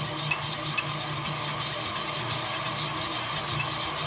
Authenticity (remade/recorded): recorded